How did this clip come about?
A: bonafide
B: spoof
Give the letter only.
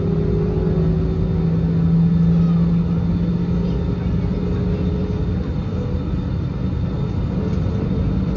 A